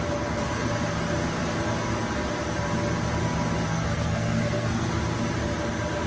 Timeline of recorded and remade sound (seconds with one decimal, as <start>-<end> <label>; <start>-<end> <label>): 0.0-3.7 recorded; 3.7-4.9 remade; 4.9-6.1 recorded

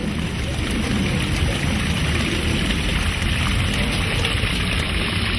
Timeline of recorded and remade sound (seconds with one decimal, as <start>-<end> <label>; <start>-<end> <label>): 0.0-5.4 recorded

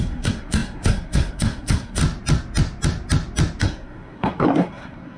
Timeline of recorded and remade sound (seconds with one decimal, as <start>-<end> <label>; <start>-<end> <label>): 0.0-2.0 remade; 2.0-3.6 recorded; 3.6-5.2 remade

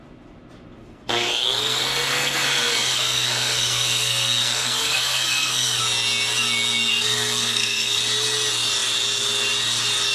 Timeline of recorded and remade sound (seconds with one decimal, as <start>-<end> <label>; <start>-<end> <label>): 0.0-0.8 recorded; 0.8-5.8 remade; 5.8-6.9 recorded; 6.9-8.0 remade; 8.0-10.1 recorded

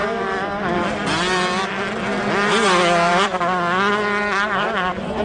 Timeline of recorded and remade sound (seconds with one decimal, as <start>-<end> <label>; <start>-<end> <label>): 0.0-5.2 recorded

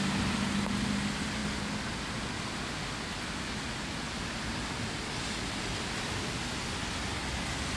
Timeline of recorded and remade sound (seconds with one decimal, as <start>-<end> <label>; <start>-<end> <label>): 0.0-7.8 recorded